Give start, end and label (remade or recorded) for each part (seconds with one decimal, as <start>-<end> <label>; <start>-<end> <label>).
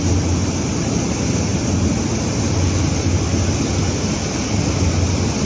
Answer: 0.0-5.4 recorded